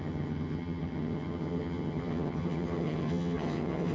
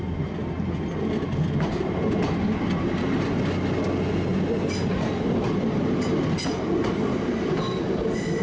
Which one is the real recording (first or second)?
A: second